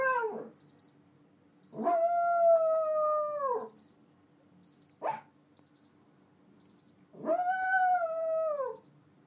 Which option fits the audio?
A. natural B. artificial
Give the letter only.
A